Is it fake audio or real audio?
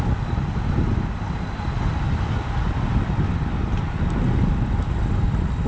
real